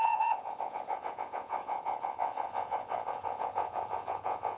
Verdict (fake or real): fake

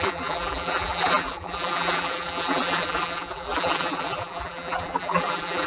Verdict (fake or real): fake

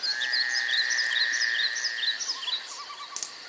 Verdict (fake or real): real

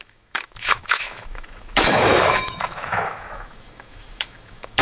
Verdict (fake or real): fake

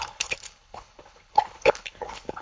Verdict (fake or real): fake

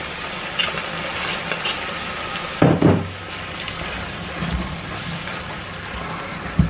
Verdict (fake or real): real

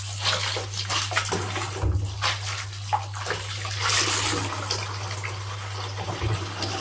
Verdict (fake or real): real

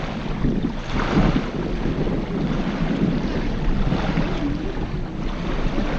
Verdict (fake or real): real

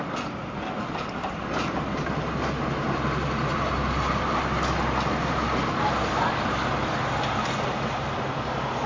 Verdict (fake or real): real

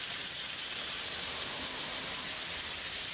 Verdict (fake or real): real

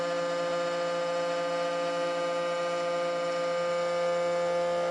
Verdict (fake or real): real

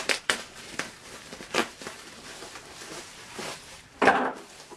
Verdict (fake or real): fake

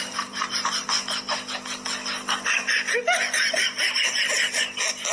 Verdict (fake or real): real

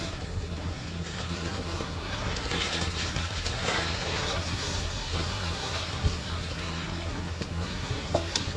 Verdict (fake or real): fake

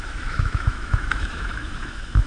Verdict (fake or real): fake